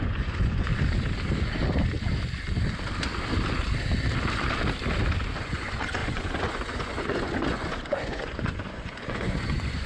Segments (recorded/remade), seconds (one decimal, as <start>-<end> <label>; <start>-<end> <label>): 0.0-0.7 remade; 0.7-5.4 recorded; 5.4-9.9 remade